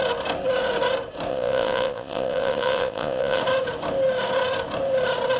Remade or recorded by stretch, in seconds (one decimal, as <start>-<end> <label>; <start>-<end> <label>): 0.0-1.3 recorded; 1.3-3.4 remade; 3.4-5.4 recorded